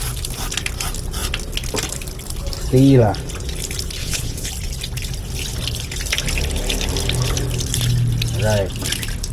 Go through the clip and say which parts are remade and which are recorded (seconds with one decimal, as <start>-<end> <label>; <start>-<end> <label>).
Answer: 0.0-4.0 recorded; 4.0-4.5 remade; 4.5-9.3 recorded